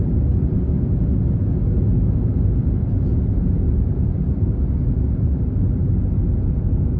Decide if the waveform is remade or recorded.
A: recorded